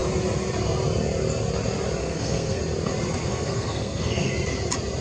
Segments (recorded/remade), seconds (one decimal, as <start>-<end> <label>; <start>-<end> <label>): 0.0-2.0 recorded; 2.0-2.6 remade; 2.6-3.2 recorded; 3.2-4.3 remade; 4.3-5.0 recorded